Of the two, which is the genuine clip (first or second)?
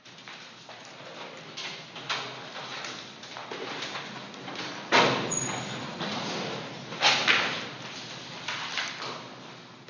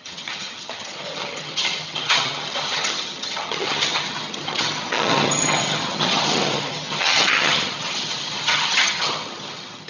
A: first